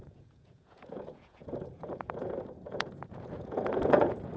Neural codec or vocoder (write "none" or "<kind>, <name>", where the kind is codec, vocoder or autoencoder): vocoder, Vocos